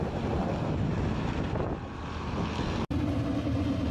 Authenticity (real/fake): real